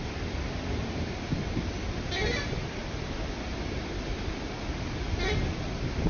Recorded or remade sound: recorded